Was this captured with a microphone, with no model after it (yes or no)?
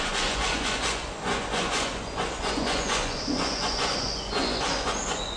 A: no